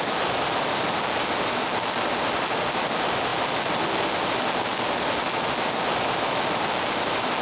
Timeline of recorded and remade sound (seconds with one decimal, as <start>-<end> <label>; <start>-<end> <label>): 0.0-7.4 recorded